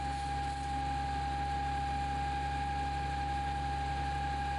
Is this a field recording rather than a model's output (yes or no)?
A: yes